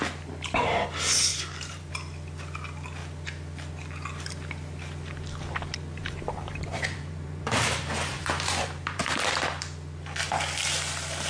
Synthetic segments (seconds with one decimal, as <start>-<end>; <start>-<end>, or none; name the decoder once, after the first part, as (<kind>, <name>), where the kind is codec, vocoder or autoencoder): 1.3-1.9 (vocoder, BigVGAN v2); 6.0-9.2